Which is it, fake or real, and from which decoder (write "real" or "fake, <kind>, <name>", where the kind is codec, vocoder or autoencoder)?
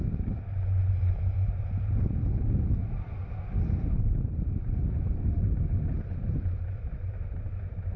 real